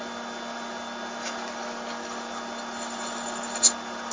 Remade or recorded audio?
recorded